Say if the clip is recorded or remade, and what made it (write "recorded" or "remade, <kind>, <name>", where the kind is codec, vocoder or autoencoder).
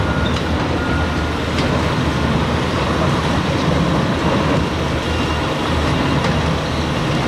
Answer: recorded